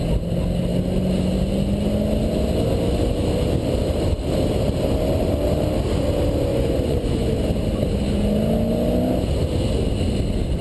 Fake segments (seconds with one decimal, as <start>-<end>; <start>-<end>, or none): 6.5-7.3

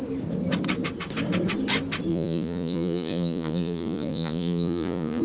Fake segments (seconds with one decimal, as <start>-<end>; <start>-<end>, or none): 2.1-5.2

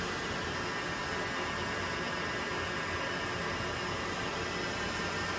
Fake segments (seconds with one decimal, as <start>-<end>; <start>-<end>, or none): none

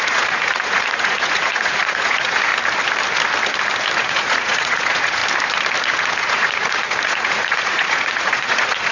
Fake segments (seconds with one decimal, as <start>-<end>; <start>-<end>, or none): 0.0-2.5; 4.0-5.2; 5.8-8.9

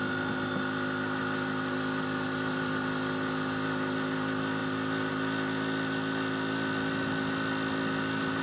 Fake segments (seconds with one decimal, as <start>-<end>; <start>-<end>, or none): none